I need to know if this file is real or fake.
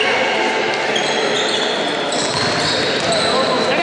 real